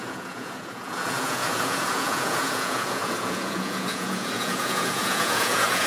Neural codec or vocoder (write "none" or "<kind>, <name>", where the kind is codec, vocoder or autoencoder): vocoder, Vocos